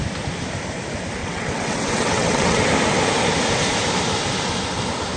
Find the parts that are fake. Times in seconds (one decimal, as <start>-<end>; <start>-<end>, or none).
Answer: 1.2-2.6